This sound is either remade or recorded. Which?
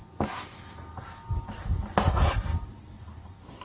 recorded